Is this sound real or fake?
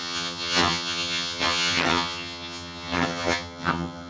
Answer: fake